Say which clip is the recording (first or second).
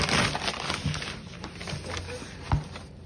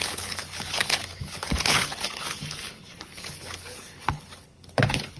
first